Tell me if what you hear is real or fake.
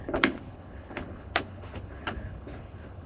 fake